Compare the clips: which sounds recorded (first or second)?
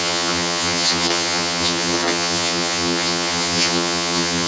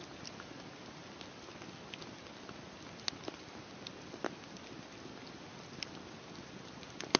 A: second